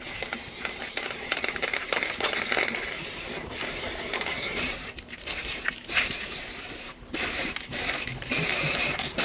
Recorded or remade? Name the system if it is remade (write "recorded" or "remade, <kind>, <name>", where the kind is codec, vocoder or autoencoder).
remade, vocoder, BigVGAN v2